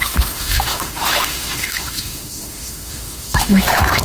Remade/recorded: remade